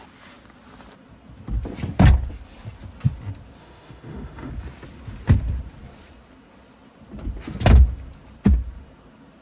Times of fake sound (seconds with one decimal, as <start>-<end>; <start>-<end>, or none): 3.6-4.5